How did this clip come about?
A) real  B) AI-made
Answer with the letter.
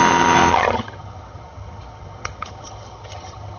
B